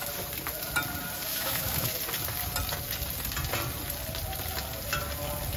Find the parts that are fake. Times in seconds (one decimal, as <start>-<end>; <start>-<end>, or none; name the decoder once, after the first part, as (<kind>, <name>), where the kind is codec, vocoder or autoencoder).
1.3-1.9 (autoencoder, DAC-VAE)